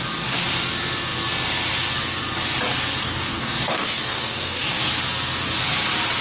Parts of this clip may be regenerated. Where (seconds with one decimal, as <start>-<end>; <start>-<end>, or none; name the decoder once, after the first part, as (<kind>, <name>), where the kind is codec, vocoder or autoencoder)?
3.0-4.9 (codec, DAC)